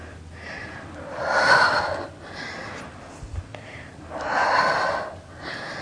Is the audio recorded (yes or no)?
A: yes